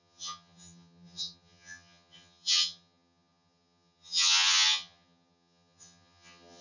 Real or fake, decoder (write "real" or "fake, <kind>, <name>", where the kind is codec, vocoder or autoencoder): fake, vocoder, HiFi-GAN